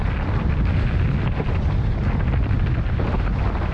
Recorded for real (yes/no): yes